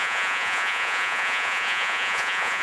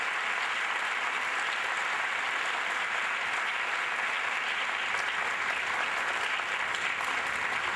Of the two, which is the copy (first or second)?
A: first